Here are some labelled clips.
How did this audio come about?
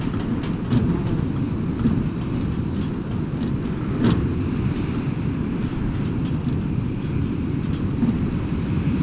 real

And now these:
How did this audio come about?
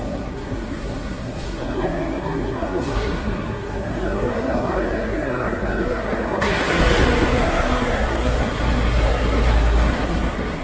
fake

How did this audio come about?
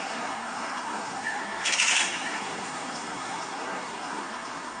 fake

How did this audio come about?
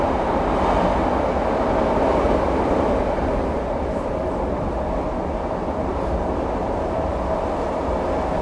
real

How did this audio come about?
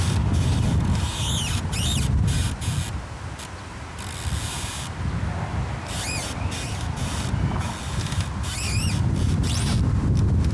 real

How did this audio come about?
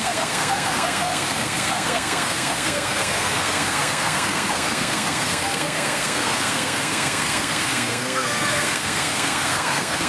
fake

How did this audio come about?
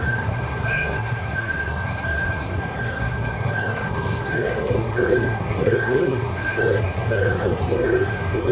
fake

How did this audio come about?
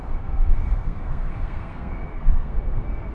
fake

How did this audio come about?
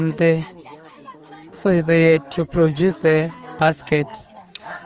fake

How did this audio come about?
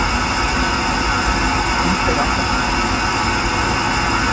real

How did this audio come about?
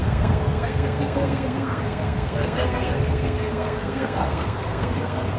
fake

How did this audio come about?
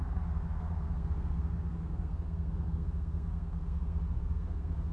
fake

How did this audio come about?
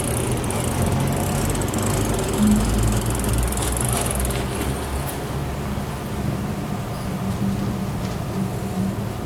real